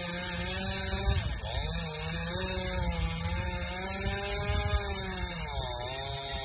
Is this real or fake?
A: real